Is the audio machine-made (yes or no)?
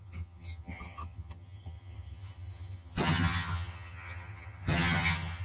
yes